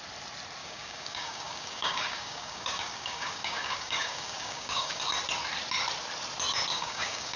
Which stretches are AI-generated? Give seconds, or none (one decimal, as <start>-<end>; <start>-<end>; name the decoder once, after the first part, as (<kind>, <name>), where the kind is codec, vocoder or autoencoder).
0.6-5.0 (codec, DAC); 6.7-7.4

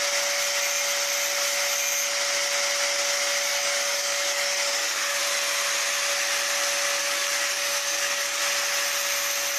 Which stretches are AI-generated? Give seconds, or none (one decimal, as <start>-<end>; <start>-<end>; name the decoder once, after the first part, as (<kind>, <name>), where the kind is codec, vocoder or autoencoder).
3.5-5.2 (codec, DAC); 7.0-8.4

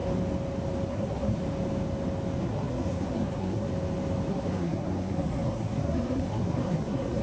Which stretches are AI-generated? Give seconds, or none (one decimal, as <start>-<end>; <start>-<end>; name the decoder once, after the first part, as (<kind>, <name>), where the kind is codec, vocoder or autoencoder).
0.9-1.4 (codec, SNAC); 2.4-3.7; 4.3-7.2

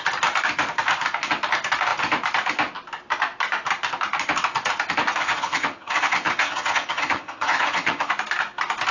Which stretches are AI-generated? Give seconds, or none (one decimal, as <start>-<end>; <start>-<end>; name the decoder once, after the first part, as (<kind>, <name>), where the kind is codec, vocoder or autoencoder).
5.2-8.1 (vocoder, HiFi-GAN)